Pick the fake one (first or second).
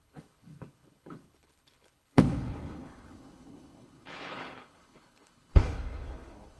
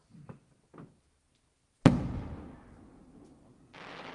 first